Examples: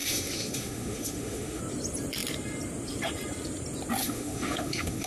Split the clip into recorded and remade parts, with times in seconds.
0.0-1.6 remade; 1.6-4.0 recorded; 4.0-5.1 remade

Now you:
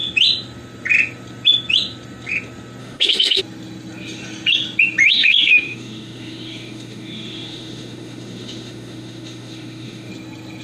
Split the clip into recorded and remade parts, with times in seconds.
0.0-2.8 recorded; 2.8-3.4 remade; 3.4-5.1 recorded; 5.1-10.1 remade; 10.1-10.6 recorded

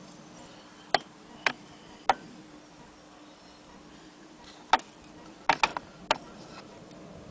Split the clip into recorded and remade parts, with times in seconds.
0.0-7.3 recorded